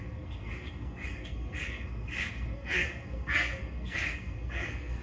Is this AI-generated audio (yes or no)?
yes